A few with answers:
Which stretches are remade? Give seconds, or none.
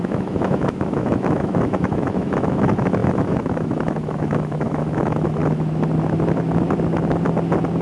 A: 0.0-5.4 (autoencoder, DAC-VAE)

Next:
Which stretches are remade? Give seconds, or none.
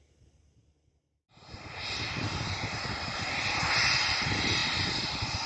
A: none